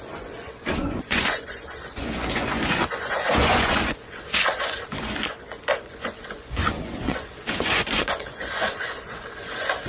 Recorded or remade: remade